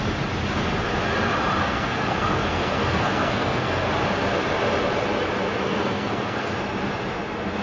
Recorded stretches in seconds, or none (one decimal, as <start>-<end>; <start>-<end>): 0.0-1.6; 3.9-5.6; 6.5-7.6